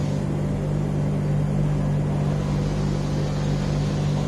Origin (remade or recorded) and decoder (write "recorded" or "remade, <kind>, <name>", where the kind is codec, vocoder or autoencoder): recorded